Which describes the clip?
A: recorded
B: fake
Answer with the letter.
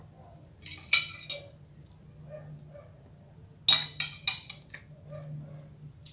A